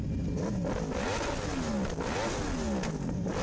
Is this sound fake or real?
real